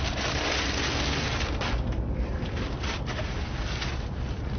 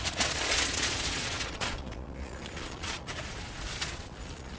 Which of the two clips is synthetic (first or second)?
second